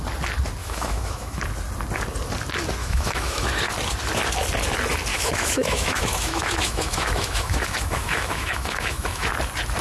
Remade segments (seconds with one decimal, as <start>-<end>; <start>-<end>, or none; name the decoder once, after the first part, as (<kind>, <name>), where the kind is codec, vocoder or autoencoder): 0.6-1.4 (autoencoder, DAC-VAE); 2.8-3.5; 5.1-9.3